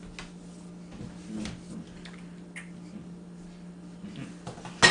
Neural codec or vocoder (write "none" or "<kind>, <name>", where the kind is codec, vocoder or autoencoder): none